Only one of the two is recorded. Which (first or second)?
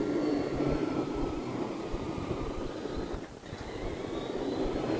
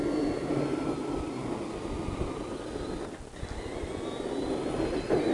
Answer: second